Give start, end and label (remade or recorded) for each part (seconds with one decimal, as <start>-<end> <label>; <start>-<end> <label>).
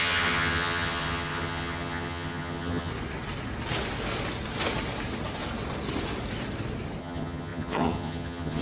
0.0-2.9 remade; 2.9-7.0 recorded; 7.0-8.6 remade